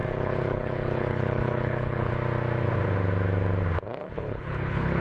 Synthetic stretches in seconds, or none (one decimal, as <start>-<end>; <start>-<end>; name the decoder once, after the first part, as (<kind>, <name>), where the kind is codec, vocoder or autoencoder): 0.0-2.1 (codec, HILCodec); 4.0-5.0